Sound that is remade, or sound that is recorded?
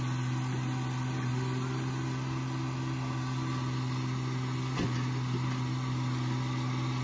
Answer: recorded